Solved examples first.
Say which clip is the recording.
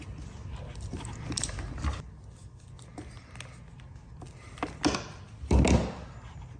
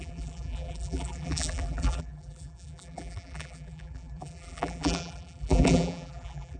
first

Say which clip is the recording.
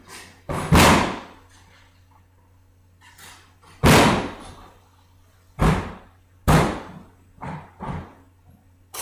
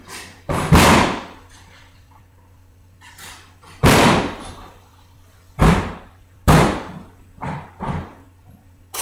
first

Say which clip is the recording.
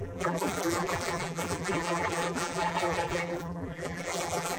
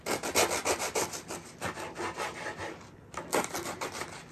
second